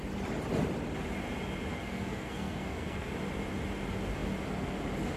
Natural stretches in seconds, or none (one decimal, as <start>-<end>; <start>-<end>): 0.0-1.7; 3.1-5.2